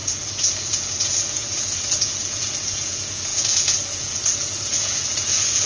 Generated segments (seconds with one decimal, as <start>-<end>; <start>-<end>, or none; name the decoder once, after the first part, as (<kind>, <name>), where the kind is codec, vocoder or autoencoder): 0.0-5.7 (vocoder, Vocos)